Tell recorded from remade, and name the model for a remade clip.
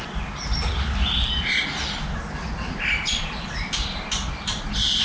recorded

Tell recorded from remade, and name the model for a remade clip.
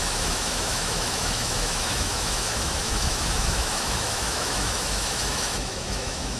remade, autoencoder, DAC-VAE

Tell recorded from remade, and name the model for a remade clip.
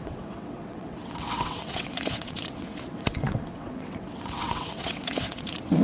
remade, vocoder, WaveNeXt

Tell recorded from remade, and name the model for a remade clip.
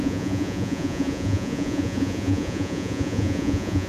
remade, vocoder, Vocos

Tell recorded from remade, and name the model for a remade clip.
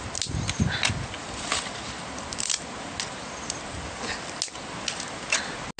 recorded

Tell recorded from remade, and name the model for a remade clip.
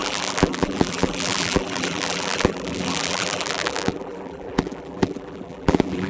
remade, vocoder, BigVGAN v2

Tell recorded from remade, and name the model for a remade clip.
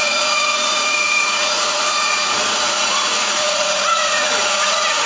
remade, vocoder, Vocos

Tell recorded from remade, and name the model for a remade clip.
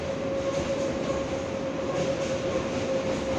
recorded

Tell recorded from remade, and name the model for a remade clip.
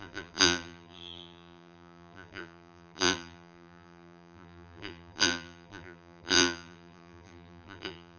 remade, vocoder, BigVGAN v2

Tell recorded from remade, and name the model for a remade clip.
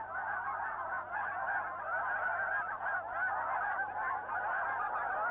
recorded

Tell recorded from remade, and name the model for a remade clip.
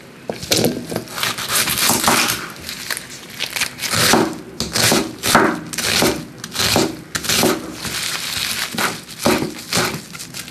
recorded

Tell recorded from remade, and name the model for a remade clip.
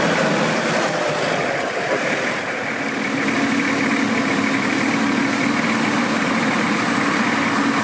recorded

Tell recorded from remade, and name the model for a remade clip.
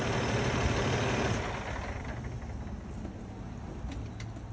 recorded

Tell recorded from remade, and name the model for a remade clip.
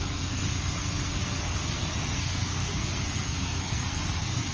remade, codec, SNAC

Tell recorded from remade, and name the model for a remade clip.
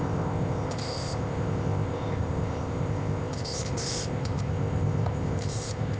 remade, codec, ZipCodec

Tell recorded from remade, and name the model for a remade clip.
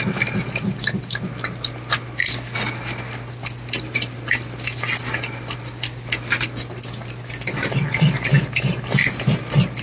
recorded